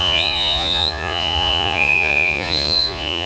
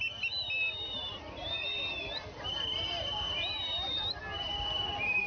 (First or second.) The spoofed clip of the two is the first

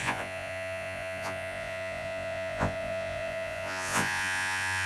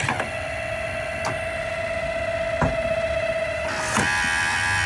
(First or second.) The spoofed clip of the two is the first